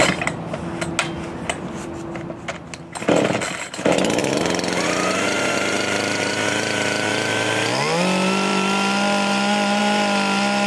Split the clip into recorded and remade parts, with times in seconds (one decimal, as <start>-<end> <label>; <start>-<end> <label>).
0.0-4.2 recorded; 4.2-6.3 remade; 6.3-10.7 recorded